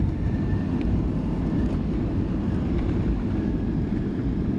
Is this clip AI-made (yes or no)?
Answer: no